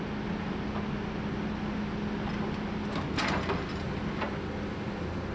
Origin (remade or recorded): recorded